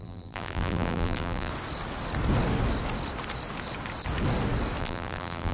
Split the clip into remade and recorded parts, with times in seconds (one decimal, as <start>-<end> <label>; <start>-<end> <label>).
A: 0.0-1.5 remade; 1.5-4.8 recorded; 4.8-5.5 remade